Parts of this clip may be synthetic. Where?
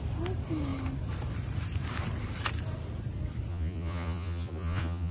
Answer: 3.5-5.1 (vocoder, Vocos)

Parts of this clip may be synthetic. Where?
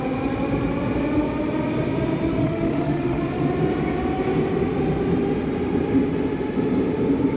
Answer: 2.4-3.2 (autoencoder, DAC-VAE)